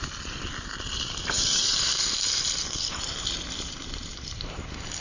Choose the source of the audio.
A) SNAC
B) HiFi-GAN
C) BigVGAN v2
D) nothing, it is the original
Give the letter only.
C